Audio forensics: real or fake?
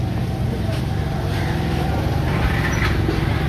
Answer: real